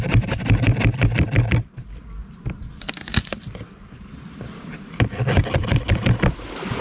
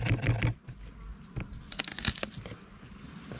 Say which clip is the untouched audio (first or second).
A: second